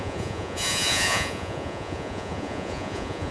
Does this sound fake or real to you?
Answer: fake